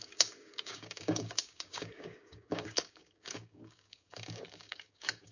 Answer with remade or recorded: remade